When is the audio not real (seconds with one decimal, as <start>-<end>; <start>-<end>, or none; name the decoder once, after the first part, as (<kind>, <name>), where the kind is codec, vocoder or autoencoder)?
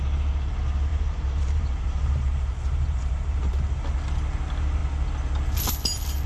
0.9-3.5 (vocoder, BigVGAN v2)